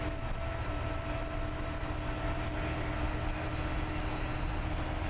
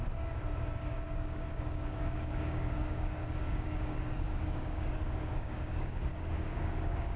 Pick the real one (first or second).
first